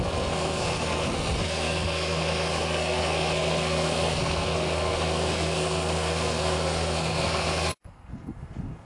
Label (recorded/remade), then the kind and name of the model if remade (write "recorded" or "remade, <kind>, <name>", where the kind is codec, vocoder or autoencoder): remade, codec, SNAC